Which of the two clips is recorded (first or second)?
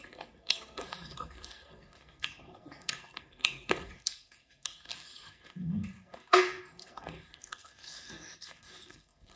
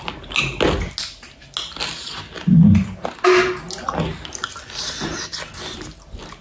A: second